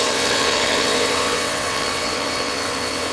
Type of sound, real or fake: fake